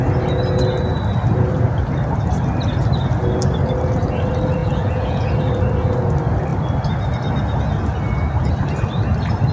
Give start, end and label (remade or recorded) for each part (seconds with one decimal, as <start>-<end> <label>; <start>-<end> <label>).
0.0-4.6 recorded; 4.6-5.3 remade; 5.3-9.5 recorded